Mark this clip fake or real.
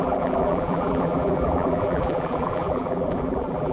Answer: fake